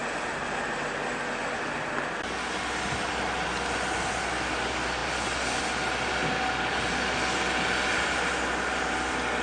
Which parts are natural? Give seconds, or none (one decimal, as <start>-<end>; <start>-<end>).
0.0-9.4